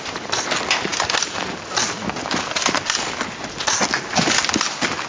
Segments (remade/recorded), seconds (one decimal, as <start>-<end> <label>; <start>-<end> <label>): 0.0-5.1 recorded